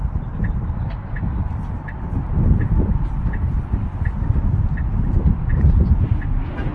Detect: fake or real fake